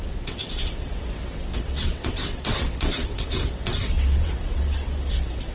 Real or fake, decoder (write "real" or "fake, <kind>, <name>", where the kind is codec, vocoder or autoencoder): fake, vocoder, WaveNeXt